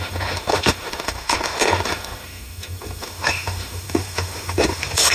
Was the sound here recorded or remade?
remade